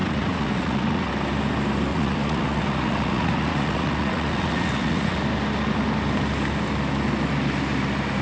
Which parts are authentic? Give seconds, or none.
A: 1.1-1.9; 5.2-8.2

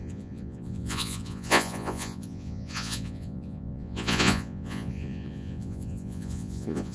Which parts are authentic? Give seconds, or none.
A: none

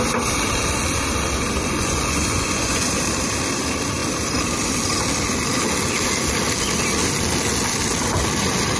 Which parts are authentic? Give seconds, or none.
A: 0.0-1.6; 2.9-8.8

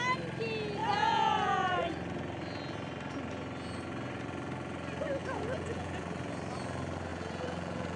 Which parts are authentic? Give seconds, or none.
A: 0.0-0.8; 1.9-5.2; 6.0-7.1